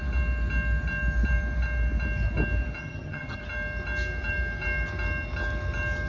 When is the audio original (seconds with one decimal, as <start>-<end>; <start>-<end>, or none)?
0.0-2.8; 3.4-6.1